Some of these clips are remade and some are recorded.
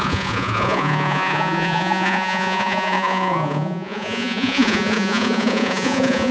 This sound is remade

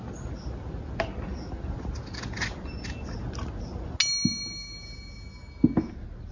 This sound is recorded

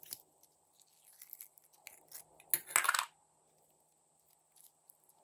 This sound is recorded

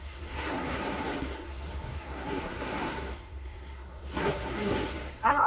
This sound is remade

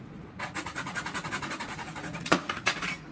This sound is remade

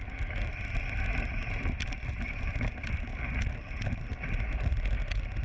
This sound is recorded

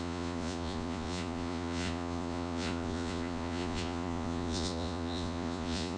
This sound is remade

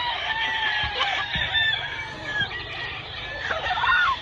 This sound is remade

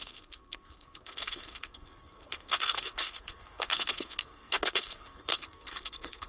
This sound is remade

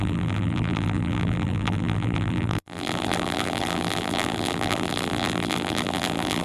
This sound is remade